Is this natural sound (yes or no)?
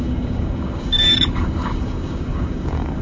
no